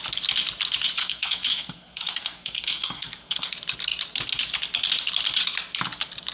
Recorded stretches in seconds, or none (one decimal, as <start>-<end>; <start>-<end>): 0.0-1.0; 3.5-6.3